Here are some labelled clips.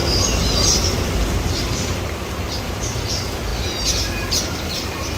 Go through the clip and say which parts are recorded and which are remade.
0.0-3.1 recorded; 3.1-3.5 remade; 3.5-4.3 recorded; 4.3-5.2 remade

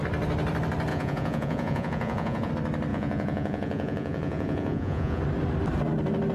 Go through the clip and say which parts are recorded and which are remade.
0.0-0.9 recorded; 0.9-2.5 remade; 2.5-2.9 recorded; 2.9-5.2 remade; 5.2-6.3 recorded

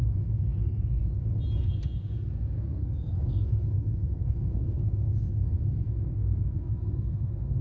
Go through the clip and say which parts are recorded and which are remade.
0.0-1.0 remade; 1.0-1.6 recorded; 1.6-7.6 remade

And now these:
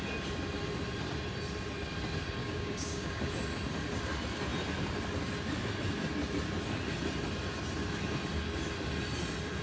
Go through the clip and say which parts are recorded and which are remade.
0.0-2.4 recorded; 2.4-3.2 remade; 3.2-9.6 recorded

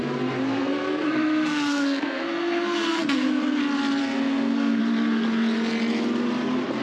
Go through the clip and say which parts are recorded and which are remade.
0.0-0.6 recorded; 0.6-3.6 remade; 3.6-4.0 recorded; 4.0-4.8 remade; 4.8-6.8 recorded